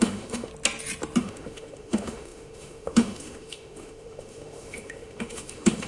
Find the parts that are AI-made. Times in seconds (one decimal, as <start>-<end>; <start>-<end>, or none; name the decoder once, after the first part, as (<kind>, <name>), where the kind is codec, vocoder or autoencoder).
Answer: 0.0-0.5 (autoencoder, DAC-VAE); 1.2-5.9